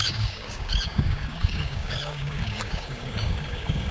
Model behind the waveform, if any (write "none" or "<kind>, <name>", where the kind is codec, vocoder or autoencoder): codec, DAC